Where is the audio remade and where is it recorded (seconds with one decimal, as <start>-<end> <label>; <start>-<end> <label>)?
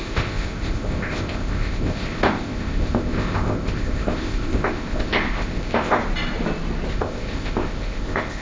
0.0-6.0 remade; 6.0-6.9 recorded; 6.9-8.4 remade